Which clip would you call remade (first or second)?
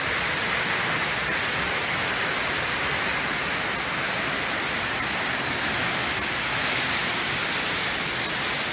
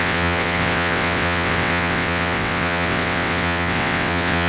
second